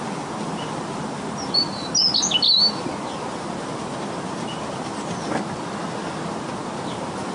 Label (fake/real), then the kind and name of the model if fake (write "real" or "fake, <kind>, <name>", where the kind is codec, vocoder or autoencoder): real